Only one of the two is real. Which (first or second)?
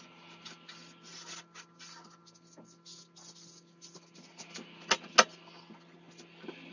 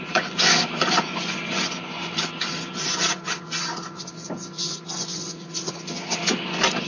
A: first